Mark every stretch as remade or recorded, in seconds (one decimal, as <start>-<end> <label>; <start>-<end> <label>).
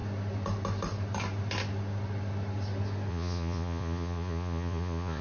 0.0-3.1 recorded; 3.1-5.2 remade